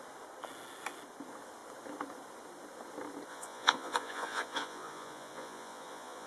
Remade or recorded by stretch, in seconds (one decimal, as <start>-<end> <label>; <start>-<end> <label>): 0.0-3.3 recorded; 3.3-6.3 remade